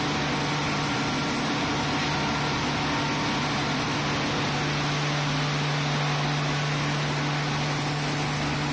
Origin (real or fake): real